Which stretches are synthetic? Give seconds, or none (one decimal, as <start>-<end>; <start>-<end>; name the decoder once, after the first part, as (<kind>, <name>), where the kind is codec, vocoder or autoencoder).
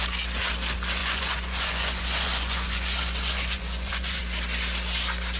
1.0-4.2 (vocoder, Vocos)